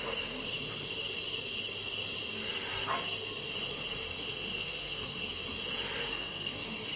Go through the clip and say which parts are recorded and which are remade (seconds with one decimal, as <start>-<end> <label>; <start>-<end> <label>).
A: 0.0-4.2 recorded; 4.2-5.4 remade; 5.4-6.0 recorded; 6.0-6.6 remade; 6.6-7.0 recorded